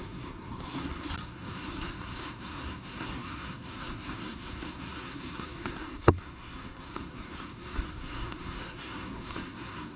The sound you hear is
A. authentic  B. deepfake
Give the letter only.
B